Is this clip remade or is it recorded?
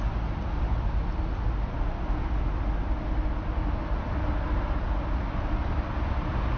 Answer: recorded